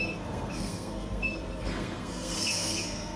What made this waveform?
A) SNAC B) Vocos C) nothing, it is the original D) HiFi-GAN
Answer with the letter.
A